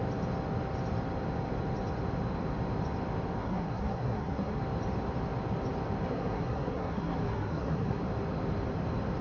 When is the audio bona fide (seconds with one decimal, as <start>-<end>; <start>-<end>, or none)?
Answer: 0.0-3.4; 4.6-6.1; 8.0-9.2